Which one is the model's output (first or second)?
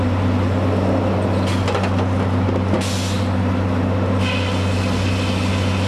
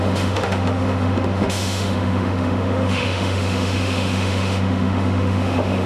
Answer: second